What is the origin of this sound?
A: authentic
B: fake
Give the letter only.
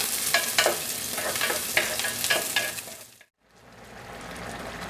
A